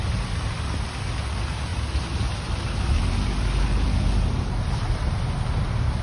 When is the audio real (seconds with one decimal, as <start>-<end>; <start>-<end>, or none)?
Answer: 0.0-6.0